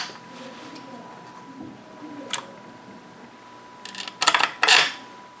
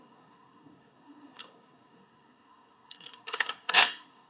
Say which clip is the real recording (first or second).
first